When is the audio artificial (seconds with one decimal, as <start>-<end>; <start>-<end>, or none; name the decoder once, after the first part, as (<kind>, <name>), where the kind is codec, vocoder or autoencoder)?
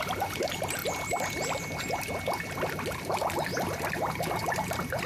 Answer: 0.0-0.8 (vocoder, BigVGAN v2); 3.9-5.1